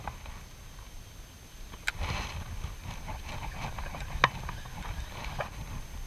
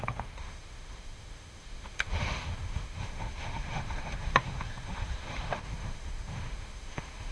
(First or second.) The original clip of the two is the first